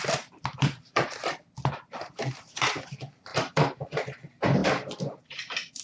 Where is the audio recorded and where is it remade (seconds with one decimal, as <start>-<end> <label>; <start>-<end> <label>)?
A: 0.0-5.8 remade